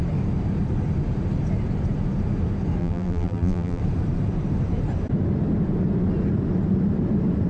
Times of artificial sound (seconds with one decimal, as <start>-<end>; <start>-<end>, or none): 2.8-3.8